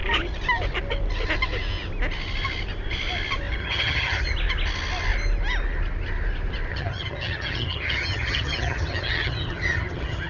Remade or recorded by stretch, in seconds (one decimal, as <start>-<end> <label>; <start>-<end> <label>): 0.0-3.6 recorded; 3.6-4.2 remade; 4.2-6.7 recorded; 6.7-10.3 remade